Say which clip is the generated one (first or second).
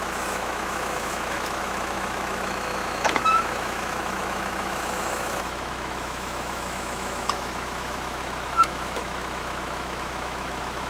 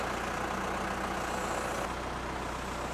first